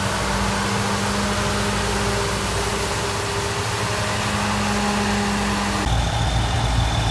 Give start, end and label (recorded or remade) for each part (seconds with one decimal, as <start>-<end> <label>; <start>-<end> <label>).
0.0-7.1 recorded